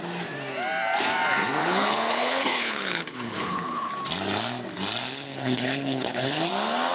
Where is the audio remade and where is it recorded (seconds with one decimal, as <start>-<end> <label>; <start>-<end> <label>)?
0.0-1.6 recorded; 1.6-3.9 remade; 3.9-5.0 recorded; 5.0-6.5 remade; 6.5-6.9 recorded